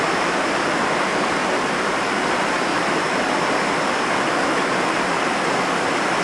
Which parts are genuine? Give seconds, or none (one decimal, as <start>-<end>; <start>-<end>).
0.0-6.2